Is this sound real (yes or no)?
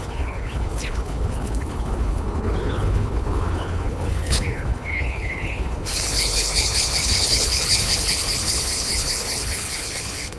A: no